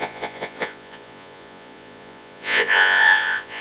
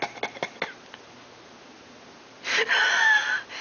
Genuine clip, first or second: second